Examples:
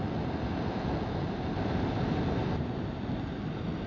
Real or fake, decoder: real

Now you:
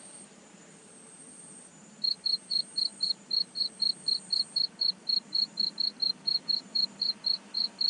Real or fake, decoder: fake, vocoder, BigVGAN v2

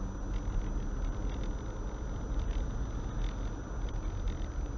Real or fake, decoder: real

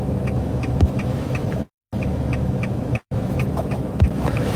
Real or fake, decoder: fake, autoencoder, DAC-VAE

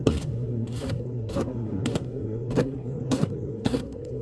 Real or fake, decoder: fake, codec, SNAC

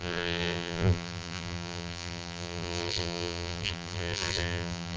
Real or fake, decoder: fake, vocoder, BigVGAN v2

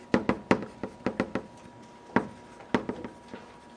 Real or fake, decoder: real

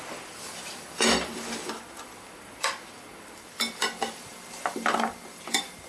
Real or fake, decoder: fake, vocoder, BigVGAN v2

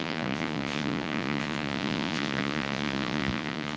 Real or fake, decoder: fake, vocoder, Vocos